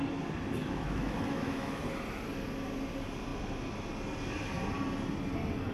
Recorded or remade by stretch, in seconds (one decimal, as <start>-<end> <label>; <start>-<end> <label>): 0.0-0.6 recorded; 0.6-1.8 remade; 1.8-5.7 recorded

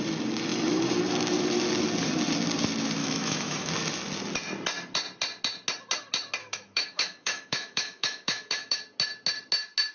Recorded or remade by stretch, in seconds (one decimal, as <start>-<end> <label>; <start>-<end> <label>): 0.0-3.0 recorded; 3.0-3.7 remade; 3.7-6.4 recorded; 6.4-8.8 remade; 8.8-9.9 recorded

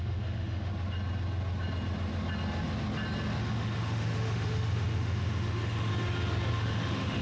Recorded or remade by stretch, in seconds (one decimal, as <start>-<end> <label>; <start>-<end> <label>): 0.0-0.7 remade; 0.7-3.4 recorded; 3.4-5.9 remade; 5.9-6.5 recorded; 6.5-7.2 remade

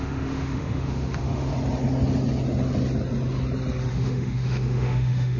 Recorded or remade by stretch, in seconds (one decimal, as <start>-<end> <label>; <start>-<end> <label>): 0.0-1.5 remade; 1.5-3.9 recorded; 3.9-5.4 remade

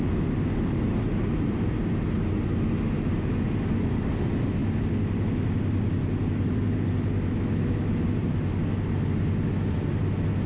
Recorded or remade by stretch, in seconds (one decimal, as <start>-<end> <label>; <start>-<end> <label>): 0.0-10.5 recorded